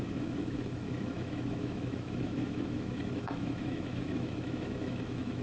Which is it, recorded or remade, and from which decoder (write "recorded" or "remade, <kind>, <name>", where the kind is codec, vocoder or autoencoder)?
remade, autoencoder, DAC-VAE